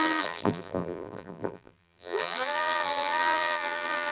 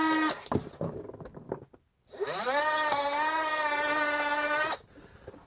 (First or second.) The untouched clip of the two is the second